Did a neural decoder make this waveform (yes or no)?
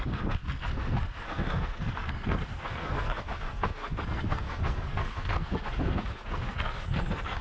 yes